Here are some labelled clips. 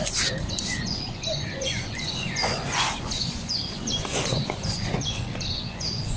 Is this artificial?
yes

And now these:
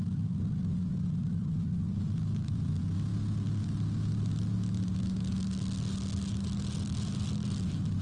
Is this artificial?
no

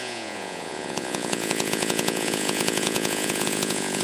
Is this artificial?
yes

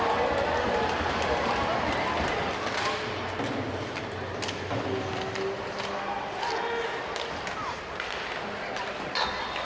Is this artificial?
no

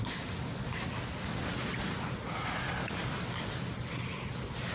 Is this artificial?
no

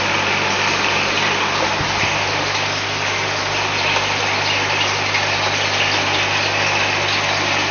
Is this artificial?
no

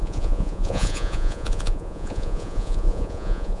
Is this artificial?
yes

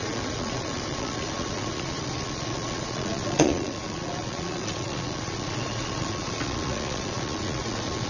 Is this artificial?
yes